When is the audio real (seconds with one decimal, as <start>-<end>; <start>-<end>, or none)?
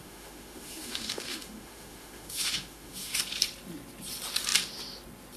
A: 3.2-5.4